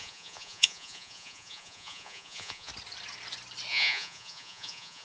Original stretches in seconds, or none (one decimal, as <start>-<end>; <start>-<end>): 2.7-3.7